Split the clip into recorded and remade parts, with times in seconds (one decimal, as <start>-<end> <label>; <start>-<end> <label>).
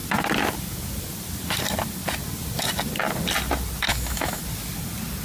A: 0.0-3.9 recorded; 3.9-4.4 remade; 4.4-5.2 recorded